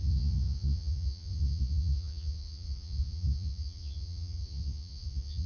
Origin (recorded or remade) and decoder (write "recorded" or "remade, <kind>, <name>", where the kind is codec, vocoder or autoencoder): remade, vocoder, Vocos